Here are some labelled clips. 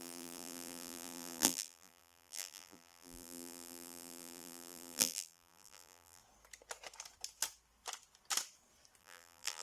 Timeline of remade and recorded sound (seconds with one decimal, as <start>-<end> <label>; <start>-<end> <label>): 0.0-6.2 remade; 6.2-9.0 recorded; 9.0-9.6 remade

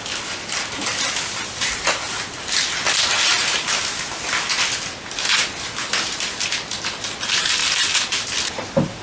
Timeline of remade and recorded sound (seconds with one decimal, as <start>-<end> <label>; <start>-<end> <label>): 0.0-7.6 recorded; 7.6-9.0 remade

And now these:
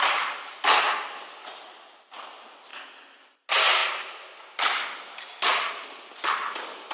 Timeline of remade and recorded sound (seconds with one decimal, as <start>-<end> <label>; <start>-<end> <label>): 0.0-6.9 recorded